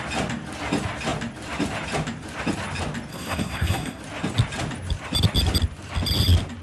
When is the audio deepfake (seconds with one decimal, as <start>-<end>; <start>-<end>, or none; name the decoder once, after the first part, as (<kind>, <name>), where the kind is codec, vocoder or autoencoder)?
3.1-4.0 (codec, SNAC)